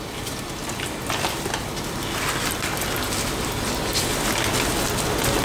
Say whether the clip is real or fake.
real